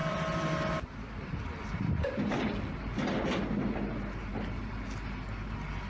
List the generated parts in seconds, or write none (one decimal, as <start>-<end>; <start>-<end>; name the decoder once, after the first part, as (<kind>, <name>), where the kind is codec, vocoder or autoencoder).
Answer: 0.0-2.6 (vocoder, BigVGAN v2)